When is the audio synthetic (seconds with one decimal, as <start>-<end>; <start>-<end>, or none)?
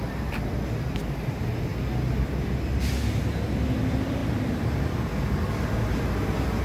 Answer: 4.2-5.0